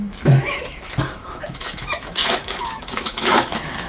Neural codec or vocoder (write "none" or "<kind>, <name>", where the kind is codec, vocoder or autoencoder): autoencoder, DAC-VAE